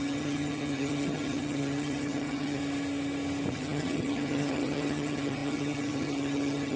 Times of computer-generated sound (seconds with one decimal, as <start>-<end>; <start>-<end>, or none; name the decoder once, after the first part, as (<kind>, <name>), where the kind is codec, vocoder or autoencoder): 0.0-2.6 (vocoder, HiFi-GAN); 3.5-6.8